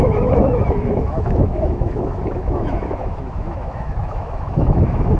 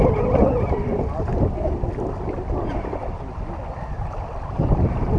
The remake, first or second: first